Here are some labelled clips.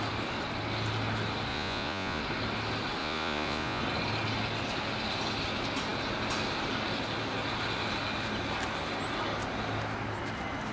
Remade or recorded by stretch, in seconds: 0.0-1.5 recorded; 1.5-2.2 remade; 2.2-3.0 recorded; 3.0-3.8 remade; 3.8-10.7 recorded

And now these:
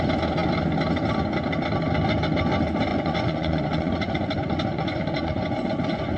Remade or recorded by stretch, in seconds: 0.0-2.9 recorded; 2.9-6.2 remade

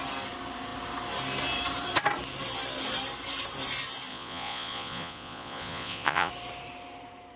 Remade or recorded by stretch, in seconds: 0.0-4.1 recorded; 4.1-6.3 remade; 6.3-7.4 recorded

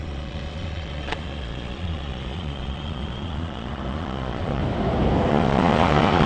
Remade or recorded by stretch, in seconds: 0.0-4.6 remade; 4.6-5.3 recorded; 5.3-6.3 remade

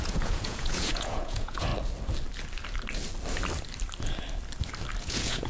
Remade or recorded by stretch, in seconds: 0.0-1.7 remade; 1.7-5.0 recorded; 5.0-5.5 remade